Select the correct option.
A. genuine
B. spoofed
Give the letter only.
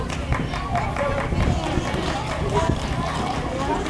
A